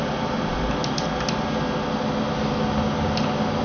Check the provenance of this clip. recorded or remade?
recorded